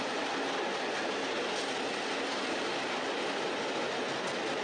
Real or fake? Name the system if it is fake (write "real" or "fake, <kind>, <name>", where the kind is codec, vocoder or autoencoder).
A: real